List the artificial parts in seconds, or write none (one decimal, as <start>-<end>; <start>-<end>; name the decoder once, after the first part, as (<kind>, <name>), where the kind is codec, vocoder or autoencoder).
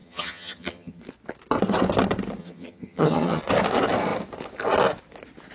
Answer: 0.0-1.0 (vocoder, HiFi-GAN); 2.4-3.4